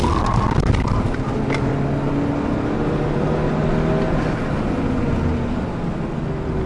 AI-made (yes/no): no